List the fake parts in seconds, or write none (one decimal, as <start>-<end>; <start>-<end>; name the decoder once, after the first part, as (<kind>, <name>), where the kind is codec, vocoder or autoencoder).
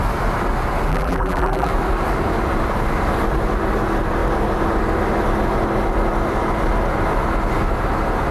0.9-1.7 (vocoder, BigVGAN v2)